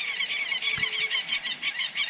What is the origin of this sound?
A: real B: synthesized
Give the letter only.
B